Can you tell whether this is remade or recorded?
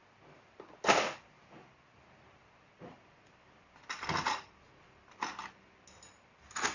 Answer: recorded